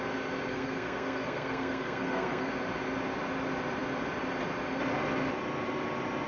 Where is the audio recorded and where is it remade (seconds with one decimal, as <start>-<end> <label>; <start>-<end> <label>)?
0.0-0.5 recorded; 0.5-2.5 remade; 2.5-6.3 recorded